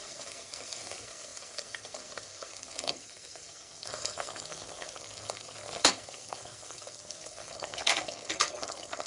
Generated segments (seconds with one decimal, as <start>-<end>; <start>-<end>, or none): 0.0-9.1

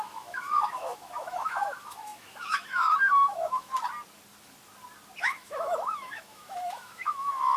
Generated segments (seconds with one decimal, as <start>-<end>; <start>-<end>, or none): 0.0-3.7; 5.2-7.6

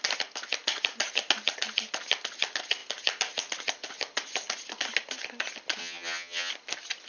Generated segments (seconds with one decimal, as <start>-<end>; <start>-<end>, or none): 5.8-6.5

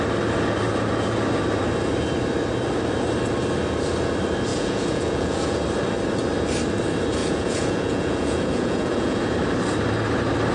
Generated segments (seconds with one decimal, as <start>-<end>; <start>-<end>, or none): 4.5-5.6; 7.2-9.2

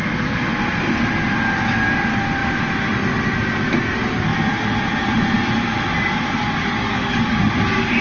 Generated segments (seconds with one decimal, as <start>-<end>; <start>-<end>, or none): 6.4-7.4

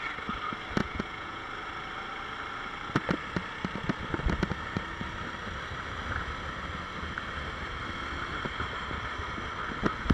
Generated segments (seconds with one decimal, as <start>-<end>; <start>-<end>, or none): 0.8-1.5

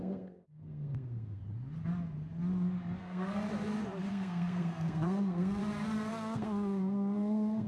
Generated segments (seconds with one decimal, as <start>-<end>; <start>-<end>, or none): 0.0-1.4; 3.0-3.5; 4.1-5.6; 6.1-7.7

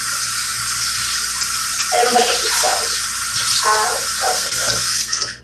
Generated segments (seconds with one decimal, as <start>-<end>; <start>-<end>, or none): 4.3-5.4